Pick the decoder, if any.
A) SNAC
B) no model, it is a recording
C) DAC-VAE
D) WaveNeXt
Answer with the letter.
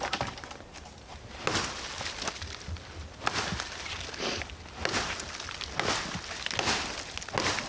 B